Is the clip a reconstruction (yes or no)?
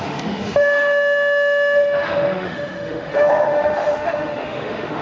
yes